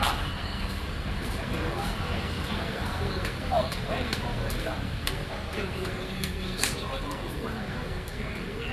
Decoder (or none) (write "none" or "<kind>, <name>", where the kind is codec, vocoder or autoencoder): codec, SNAC